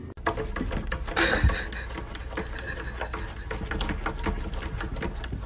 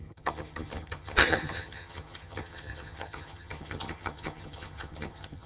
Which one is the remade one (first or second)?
second